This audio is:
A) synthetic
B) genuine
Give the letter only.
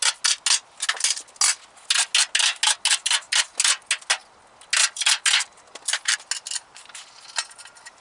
B